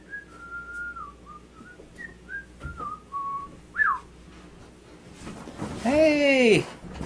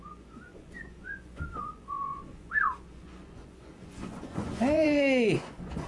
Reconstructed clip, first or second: second